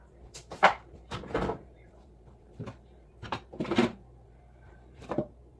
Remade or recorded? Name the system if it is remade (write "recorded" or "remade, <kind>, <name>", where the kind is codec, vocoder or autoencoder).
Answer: remade, vocoder, BigVGAN v2